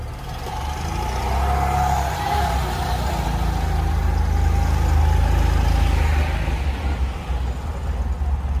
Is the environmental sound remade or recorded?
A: recorded